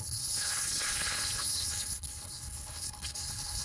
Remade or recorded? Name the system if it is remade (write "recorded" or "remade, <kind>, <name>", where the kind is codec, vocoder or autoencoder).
remade, codec, HILCodec